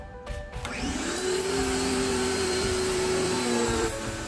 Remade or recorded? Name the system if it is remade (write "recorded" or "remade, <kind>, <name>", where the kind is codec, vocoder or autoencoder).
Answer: remade, vocoder, BigVGAN v2